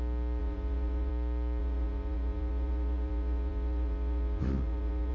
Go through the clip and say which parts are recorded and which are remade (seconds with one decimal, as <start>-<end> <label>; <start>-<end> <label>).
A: 0.0-0.4 recorded; 0.4-1.1 remade; 1.1-1.6 recorded; 1.6-5.1 remade

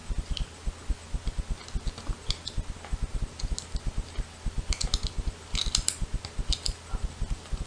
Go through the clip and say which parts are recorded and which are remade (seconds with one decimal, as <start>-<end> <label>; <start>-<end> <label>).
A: 0.0-7.7 recorded

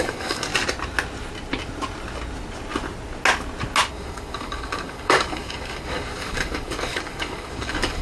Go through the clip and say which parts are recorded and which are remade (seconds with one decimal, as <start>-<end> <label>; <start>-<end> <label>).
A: 0.0-0.5 remade; 0.5-3.9 recorded; 3.9-8.0 remade

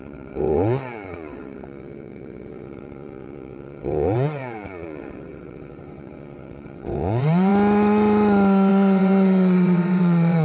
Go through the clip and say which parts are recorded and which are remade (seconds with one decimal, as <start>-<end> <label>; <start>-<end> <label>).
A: 0.0-7.5 remade; 7.5-8.7 recorded; 8.7-10.4 remade

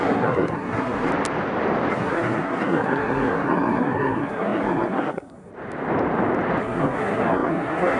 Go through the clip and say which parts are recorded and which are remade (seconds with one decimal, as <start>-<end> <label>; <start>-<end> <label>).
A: 0.0-1.1 remade; 1.1-1.9 recorded; 1.9-5.5 remade; 5.5-6.6 recorded; 6.6-8.0 remade

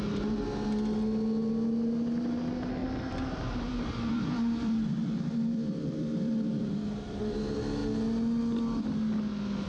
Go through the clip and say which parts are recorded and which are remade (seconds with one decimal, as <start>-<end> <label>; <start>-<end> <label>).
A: 0.0-2.8 recorded; 2.8-7.2 remade; 7.2-9.7 recorded

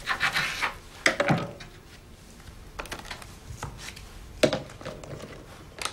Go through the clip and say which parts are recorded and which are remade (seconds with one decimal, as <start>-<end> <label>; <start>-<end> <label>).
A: 0.0-5.9 recorded

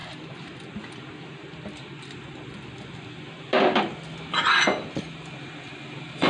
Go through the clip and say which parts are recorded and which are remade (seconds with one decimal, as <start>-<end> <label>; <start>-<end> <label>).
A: 0.0-3.8 remade; 3.8-6.3 recorded